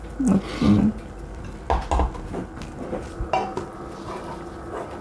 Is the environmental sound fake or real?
real